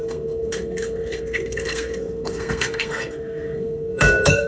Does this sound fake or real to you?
fake